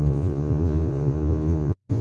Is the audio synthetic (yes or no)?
yes